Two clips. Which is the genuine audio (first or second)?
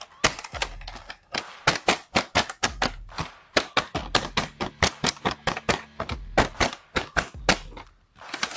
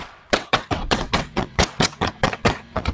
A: first